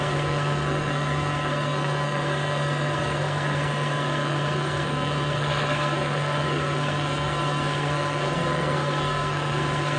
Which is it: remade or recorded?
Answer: remade